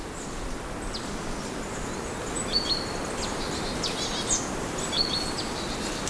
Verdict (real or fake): real